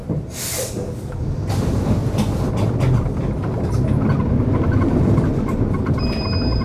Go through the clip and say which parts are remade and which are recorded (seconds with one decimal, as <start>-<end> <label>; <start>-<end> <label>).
0.0-3.4 remade; 3.4-4.0 recorded; 4.0-6.6 remade